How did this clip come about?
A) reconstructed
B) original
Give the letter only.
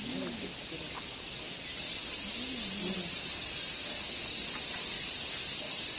B